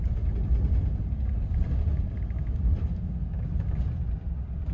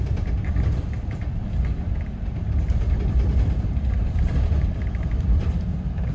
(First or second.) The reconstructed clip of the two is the second